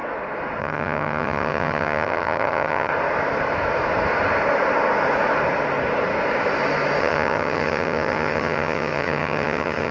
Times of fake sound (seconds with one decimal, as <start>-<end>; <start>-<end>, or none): 0.6-2.9; 7.0-9.9